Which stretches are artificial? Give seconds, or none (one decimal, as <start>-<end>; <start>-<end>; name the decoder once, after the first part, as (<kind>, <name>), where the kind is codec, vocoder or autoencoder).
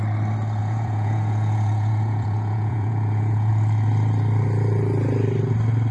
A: 0.6-3.5 (vocoder, Vocos)